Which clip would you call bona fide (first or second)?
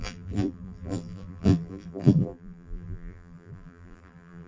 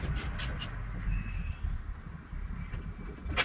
second